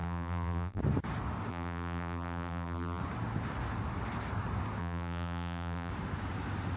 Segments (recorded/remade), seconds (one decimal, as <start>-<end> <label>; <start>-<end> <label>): 0.0-0.8 remade; 0.8-1.5 recorded; 1.5-3.0 remade; 3.0-4.8 recorded; 4.8-5.9 remade; 5.9-6.8 recorded